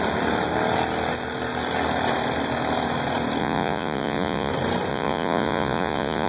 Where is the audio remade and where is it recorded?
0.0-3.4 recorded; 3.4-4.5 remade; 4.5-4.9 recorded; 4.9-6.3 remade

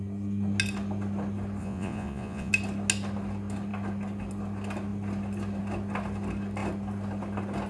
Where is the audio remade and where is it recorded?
0.0-1.6 recorded; 1.6-2.5 remade; 2.5-7.7 recorded

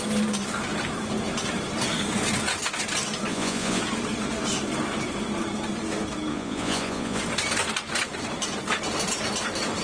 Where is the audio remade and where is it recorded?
0.0-3.3 recorded; 3.3-3.8 remade; 3.8-6.3 recorded; 6.3-7.2 remade; 7.2-9.8 recorded

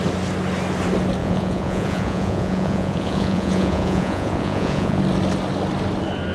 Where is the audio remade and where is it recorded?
0.0-1.2 recorded; 1.2-5.0 remade; 5.0-6.3 recorded

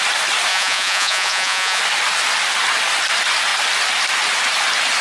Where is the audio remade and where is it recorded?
0.0-0.5 recorded; 0.5-1.8 remade; 1.8-5.0 recorded

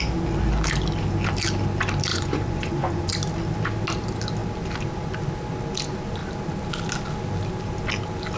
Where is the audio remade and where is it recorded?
0.0-2.1 recorded; 2.1-3.1 remade; 3.1-8.4 recorded

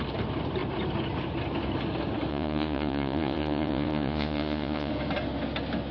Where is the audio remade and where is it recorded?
0.0-2.3 recorded; 2.3-4.9 remade; 4.9-5.9 recorded

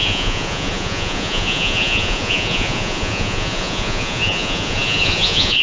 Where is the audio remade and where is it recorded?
0.0-5.6 remade